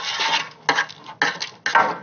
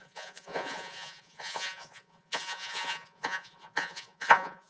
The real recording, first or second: first